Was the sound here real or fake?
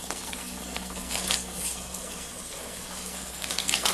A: fake